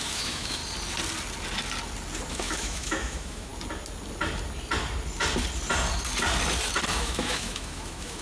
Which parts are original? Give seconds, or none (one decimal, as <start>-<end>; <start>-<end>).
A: 0.6-2.3; 3.5-6.9